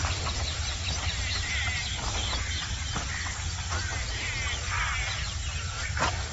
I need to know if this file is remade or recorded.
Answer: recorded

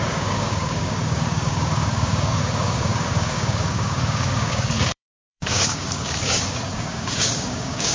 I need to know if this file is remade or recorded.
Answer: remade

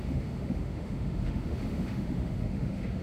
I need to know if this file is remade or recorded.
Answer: remade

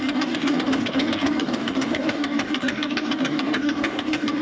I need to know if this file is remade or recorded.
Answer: remade